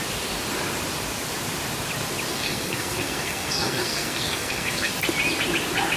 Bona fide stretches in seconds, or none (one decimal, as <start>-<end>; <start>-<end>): 0.0-2.3; 4.9-6.0